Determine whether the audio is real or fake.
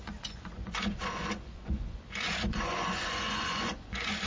fake